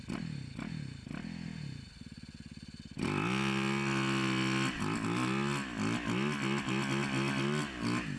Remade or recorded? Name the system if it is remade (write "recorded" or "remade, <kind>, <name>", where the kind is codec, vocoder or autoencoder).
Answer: recorded